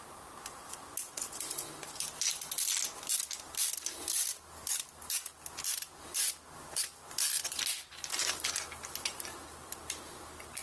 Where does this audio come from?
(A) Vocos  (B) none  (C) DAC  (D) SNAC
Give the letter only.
B